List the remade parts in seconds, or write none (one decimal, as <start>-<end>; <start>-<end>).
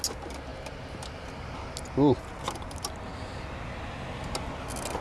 none